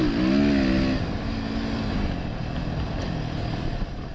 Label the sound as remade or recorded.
recorded